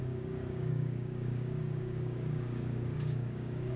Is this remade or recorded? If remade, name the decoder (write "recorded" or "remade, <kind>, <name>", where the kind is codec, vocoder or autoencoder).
remade, codec, DAC